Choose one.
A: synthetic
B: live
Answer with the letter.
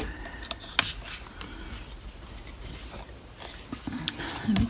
B